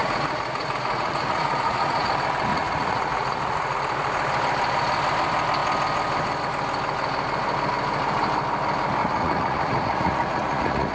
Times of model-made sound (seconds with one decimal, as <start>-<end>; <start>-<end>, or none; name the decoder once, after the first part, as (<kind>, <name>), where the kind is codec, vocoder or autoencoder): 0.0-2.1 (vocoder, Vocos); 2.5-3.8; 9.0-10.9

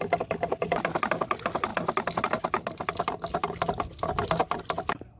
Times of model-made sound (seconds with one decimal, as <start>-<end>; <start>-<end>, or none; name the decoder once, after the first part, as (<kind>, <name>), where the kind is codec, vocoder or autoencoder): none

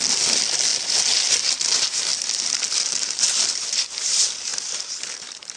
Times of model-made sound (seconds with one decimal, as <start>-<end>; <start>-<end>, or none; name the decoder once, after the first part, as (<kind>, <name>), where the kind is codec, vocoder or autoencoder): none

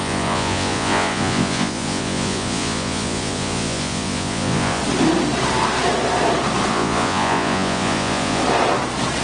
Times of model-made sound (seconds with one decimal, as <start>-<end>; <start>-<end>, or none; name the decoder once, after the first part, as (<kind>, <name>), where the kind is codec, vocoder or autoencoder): 0.0-4.8 (vocoder, Vocos); 6.7-8.4